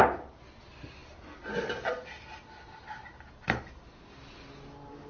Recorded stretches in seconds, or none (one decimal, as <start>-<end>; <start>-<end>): 0.0-5.1